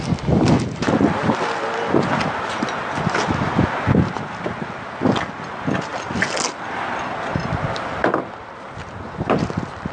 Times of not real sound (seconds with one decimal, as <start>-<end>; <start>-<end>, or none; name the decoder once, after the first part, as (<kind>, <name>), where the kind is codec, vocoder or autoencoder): none

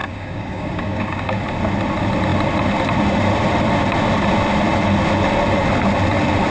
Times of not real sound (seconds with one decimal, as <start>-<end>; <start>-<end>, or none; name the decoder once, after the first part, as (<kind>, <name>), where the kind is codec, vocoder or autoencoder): 0.0-1.4 (codec, DAC)

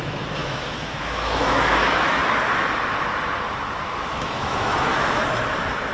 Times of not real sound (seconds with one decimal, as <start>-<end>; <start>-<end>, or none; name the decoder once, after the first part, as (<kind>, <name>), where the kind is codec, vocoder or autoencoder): 0.0-2.2 (autoencoder, DAC-VAE); 4.0-4.9

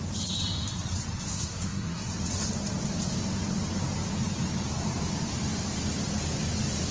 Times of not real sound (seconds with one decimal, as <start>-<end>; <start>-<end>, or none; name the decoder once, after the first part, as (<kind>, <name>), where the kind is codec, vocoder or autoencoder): 1.3-2.1 (codec, SNAC)

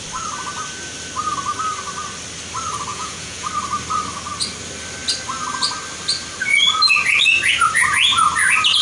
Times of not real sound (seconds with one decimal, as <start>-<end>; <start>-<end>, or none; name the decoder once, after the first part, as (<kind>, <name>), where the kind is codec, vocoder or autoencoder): 2.9-3.5 (vocoder, Vocos)

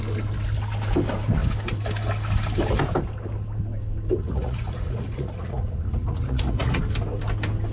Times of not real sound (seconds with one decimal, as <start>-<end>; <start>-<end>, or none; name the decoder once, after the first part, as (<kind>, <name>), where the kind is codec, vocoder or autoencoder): 4.2-6.8 (vocoder, Vocos)

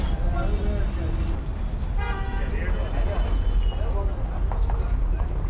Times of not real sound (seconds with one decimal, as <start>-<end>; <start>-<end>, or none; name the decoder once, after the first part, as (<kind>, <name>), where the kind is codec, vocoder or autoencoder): none